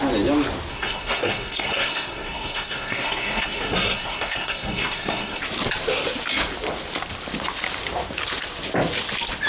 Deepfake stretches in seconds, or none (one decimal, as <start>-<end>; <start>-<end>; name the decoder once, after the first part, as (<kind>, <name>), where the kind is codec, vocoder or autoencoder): 0.7-5.4 (codec, SNAC)